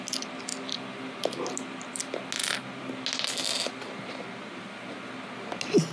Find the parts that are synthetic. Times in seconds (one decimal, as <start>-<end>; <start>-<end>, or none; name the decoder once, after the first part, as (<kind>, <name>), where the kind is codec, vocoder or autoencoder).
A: none

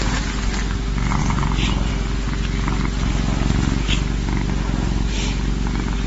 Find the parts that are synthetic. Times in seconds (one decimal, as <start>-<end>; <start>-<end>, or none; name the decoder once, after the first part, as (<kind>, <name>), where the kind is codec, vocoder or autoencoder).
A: 1.2-1.9 (vocoder, BigVGAN v2)

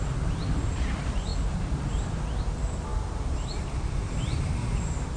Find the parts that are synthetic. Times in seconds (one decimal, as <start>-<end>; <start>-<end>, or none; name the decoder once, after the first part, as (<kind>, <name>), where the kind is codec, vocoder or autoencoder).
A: 0.0-5.2 (vocoder, BigVGAN v2)

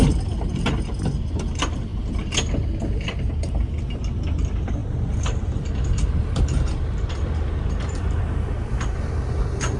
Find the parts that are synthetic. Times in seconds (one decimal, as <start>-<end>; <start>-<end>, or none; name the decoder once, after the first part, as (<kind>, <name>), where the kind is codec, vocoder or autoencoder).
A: 4.8-8.2 (vocoder, BigVGAN v2)